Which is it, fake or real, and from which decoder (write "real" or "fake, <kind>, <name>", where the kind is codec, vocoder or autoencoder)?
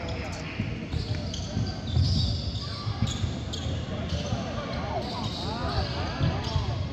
real